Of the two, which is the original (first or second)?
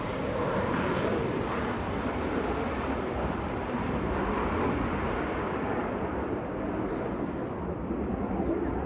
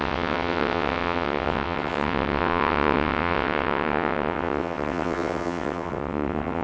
first